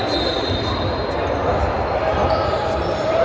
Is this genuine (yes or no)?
yes